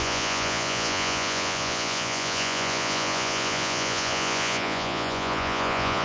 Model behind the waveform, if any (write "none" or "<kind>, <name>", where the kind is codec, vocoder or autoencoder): vocoder, Vocos